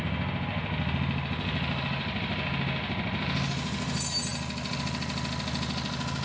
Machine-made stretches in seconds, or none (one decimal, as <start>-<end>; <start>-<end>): none